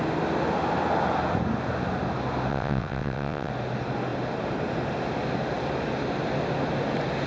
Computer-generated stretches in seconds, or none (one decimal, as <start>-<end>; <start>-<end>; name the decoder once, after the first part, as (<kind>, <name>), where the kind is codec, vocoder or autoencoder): 2.5-3.5 (vocoder, WaveNeXt)